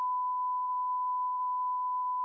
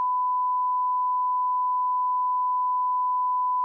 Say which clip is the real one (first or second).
second